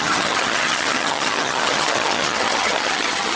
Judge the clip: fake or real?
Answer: fake